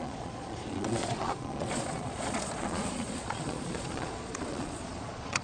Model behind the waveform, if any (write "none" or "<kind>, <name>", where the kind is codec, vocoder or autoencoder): vocoder, Vocos